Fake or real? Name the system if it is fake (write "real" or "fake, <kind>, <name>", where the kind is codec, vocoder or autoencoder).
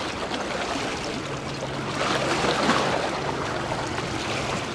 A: real